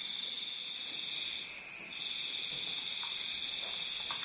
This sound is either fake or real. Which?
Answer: real